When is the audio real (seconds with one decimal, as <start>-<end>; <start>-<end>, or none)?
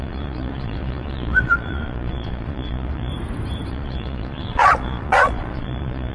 3.1-3.7